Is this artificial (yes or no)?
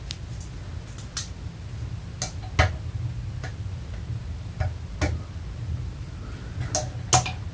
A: no